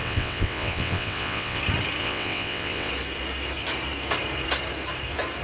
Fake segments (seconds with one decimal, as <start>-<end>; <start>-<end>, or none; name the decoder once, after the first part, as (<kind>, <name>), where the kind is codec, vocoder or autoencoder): 0.0-1.6 (vocoder, WaveNeXt); 2.0-2.9

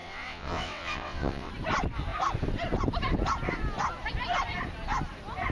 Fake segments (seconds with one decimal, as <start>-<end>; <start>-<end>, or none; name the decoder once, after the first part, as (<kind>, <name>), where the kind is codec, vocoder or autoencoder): 0.0-1.5 (vocoder, WaveNeXt)

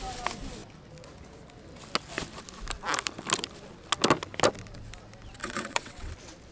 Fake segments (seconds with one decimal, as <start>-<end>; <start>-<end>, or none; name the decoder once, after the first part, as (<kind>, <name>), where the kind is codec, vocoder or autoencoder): 5.4-6.1 (vocoder, WaveNeXt)

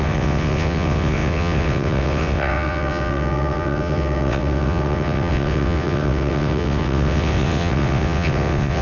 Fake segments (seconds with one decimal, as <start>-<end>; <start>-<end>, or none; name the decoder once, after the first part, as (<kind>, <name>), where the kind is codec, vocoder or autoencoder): 0.0-8.8 (vocoder, WaveNeXt)

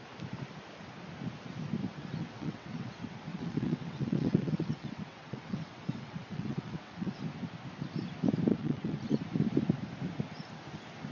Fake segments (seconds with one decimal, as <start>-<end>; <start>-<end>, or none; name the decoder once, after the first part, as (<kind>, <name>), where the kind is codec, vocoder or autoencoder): 2.2-2.9 (vocoder, WaveNeXt); 3.3-7.2; 8.5-9.2

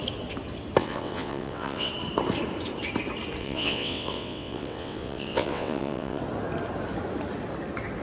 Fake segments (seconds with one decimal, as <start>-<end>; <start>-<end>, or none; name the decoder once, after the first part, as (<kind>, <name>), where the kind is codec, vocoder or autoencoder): 0.8-1.9 (vocoder, WaveNeXt); 3.4-6.2